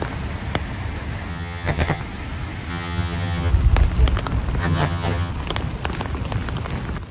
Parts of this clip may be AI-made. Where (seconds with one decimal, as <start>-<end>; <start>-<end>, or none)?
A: 1.3-2.0; 2.7-3.5; 4.6-5.3